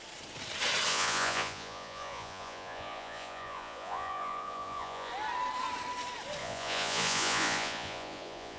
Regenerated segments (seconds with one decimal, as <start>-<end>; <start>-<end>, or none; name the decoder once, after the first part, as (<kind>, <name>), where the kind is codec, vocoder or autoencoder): 0.9-5.1 (vocoder, Vocos); 6.4-8.6